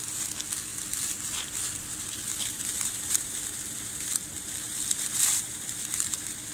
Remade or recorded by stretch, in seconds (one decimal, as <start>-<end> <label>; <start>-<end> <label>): 0.0-0.7 recorded; 0.7-1.5 remade; 1.5-2.3 recorded; 2.3-5.8 remade; 5.8-6.5 recorded